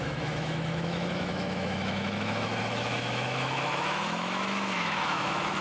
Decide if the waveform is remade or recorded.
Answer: remade